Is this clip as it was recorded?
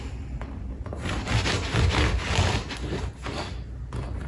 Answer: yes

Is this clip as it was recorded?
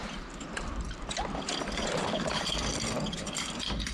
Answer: no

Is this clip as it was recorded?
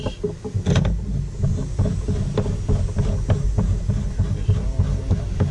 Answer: yes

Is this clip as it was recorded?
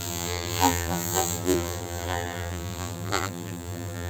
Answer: no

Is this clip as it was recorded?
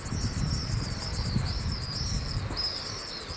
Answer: yes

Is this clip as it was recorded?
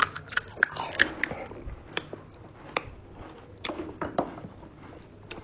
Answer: no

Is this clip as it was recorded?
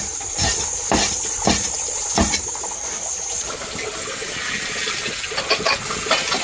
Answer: yes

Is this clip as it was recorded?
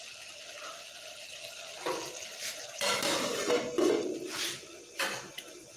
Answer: yes